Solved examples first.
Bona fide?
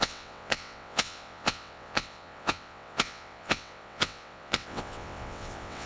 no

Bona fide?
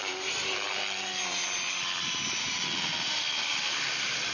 yes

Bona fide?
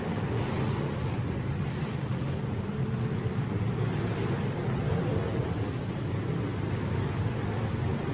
yes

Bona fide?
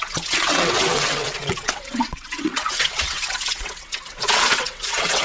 no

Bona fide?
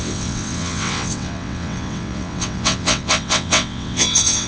no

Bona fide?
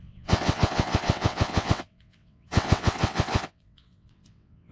no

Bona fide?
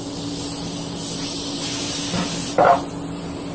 yes